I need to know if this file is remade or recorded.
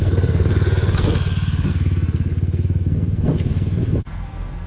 remade